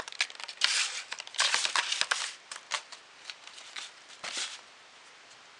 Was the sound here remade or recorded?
recorded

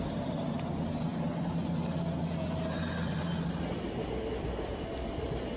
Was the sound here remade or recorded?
recorded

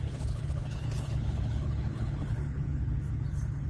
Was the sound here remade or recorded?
remade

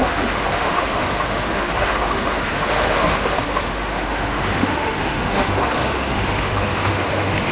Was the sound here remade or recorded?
remade